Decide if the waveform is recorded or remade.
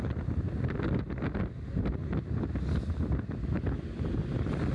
recorded